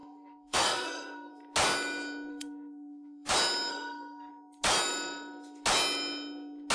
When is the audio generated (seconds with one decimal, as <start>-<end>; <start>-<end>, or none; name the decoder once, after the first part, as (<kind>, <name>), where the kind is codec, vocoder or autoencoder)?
0.0-1.3 (codec, SNAC); 2.3-3.3; 3.7-4.3